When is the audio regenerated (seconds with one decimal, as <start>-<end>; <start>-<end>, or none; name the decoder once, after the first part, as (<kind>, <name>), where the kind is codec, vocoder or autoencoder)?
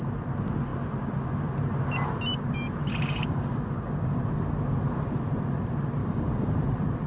2.9-4.2 (codec, DAC); 6.0-6.6